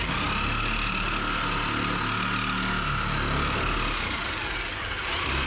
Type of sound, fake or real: real